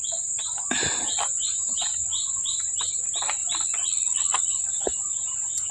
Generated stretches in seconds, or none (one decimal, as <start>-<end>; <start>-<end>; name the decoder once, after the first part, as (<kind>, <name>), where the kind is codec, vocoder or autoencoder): 0.0-3.4 (vocoder, BigVGAN v2); 4.5-5.7